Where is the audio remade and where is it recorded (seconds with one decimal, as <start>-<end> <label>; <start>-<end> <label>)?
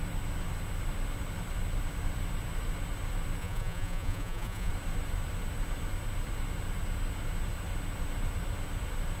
0.0-3.4 recorded; 3.4-4.7 remade; 4.7-9.2 recorded